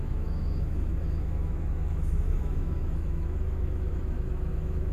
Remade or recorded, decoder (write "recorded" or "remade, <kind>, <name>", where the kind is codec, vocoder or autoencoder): remade, autoencoder, DAC-VAE